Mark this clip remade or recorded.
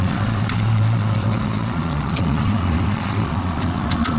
remade